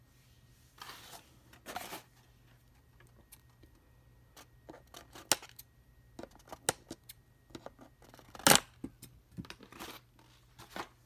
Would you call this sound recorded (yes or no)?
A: yes